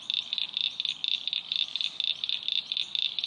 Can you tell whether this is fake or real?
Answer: real